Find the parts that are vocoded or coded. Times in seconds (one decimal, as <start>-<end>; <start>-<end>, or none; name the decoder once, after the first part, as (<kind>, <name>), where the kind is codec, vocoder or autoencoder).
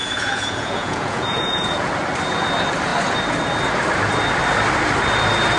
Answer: 0.0-1.9 (vocoder, Vocos)